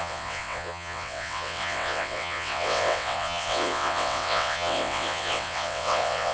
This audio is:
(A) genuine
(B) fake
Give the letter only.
B